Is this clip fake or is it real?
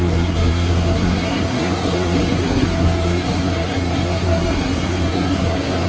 fake